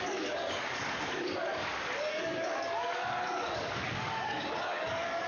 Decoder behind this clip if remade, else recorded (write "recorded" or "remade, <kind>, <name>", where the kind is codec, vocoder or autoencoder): remade, codec, DAC